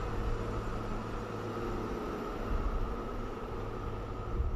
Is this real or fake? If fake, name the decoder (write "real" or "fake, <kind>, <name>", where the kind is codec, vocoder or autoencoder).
real